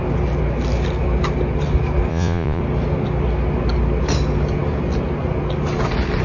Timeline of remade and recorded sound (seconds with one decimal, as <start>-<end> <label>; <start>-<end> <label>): 0.0-2.1 recorded; 2.1-2.6 remade; 2.6-6.2 recorded